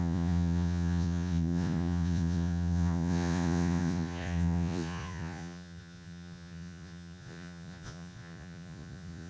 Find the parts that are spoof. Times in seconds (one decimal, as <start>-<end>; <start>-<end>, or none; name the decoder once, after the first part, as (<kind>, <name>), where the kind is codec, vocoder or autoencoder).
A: 0.0-9.3 (vocoder, Vocos)